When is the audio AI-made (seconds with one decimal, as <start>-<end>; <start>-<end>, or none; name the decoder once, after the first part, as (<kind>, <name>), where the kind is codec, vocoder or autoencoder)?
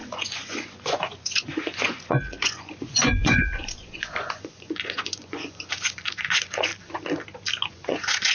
0.0-6.7 (vocoder, Vocos); 7.7-8.3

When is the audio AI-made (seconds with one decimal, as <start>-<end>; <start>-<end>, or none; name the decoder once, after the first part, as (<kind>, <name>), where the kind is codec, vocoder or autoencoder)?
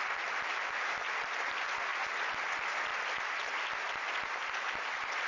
none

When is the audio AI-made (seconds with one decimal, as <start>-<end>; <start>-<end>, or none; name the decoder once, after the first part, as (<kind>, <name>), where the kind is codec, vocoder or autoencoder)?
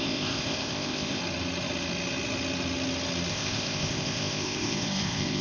0.0-1.2 (codec, ZipCodec); 3.3-5.4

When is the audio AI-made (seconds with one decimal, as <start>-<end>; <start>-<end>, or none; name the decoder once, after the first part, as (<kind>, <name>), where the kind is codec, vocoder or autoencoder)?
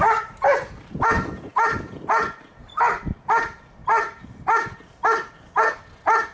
none